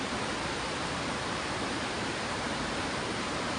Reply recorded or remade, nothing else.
remade